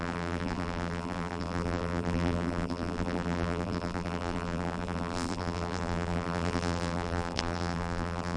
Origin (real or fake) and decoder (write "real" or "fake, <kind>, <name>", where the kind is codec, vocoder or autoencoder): fake, vocoder, BigVGAN v2